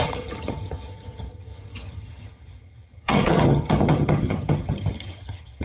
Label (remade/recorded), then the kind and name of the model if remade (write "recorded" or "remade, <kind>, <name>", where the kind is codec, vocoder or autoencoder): remade, vocoder, HiFi-GAN